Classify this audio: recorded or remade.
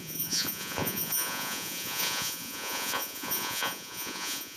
remade